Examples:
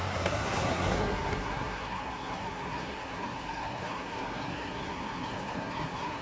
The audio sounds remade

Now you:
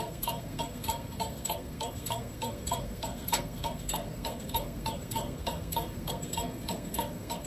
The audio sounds remade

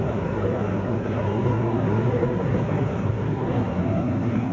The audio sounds remade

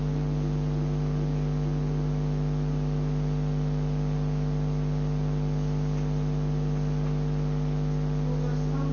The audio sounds recorded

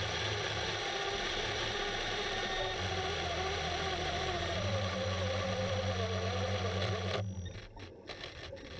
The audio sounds recorded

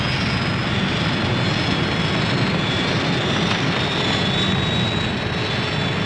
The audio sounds recorded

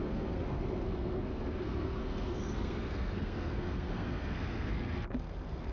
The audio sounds remade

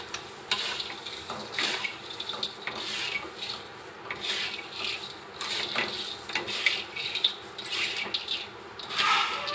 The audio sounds recorded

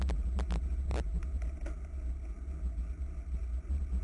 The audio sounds recorded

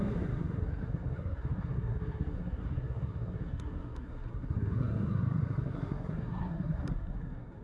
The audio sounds remade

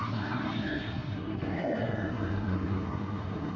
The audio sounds remade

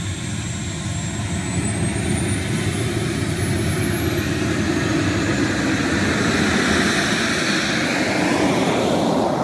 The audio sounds recorded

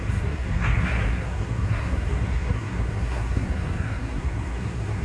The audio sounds remade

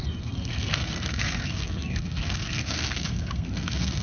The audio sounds remade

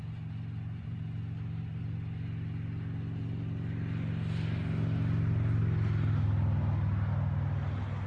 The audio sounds recorded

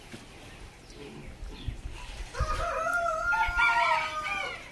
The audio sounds recorded